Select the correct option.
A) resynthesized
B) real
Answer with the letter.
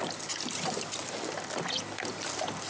B